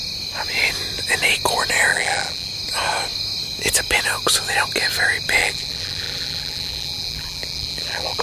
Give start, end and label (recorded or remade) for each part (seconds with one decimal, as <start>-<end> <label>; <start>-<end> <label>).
0.0-1.9 recorded; 1.9-2.5 remade; 2.5-5.4 recorded; 5.4-8.2 remade